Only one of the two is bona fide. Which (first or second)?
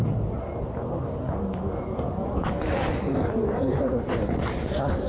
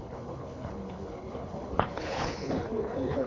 first